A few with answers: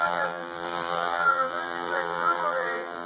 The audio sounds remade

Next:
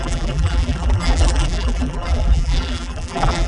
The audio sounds remade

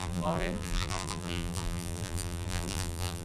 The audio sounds remade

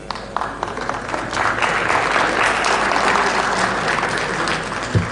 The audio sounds recorded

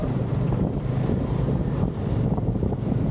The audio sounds remade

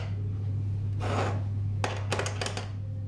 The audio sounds recorded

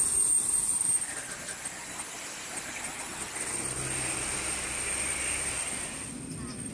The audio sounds recorded